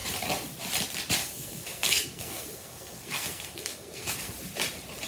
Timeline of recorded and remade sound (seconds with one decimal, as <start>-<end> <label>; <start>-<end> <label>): 0.0-1.2 recorded; 1.2-4.3 remade; 4.3-5.1 recorded